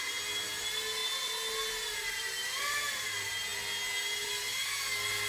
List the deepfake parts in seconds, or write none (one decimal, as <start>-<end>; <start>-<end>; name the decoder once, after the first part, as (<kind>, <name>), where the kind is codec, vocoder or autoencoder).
none